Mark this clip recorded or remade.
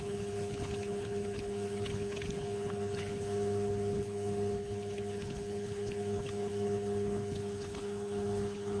remade